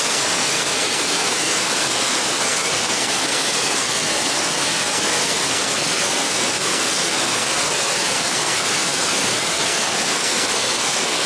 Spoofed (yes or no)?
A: yes